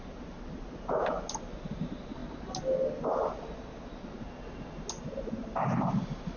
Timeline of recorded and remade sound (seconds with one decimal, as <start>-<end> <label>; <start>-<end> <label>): 0.0-6.4 recorded